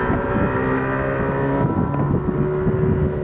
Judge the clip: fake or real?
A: real